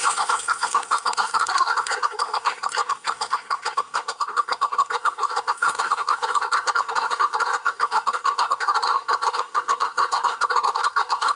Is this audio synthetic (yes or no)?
yes